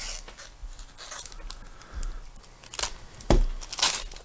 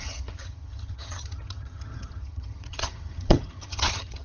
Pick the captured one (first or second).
first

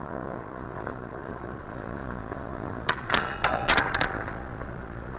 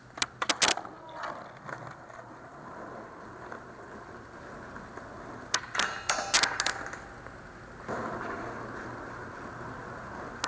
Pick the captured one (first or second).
second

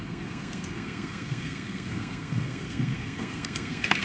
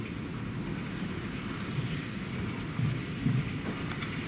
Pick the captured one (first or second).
second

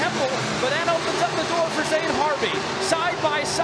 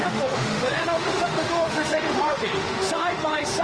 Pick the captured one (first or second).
first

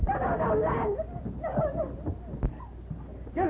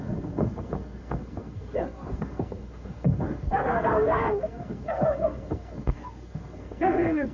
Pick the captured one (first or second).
first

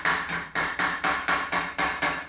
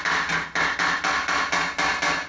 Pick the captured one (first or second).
second